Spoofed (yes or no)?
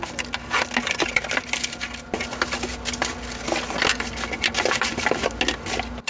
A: no